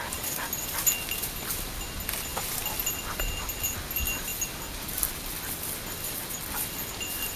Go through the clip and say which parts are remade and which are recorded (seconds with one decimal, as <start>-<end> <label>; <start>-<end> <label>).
0.0-7.4 recorded